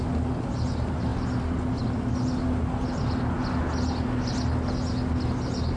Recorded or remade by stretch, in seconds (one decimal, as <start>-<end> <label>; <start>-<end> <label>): 0.0-5.8 recorded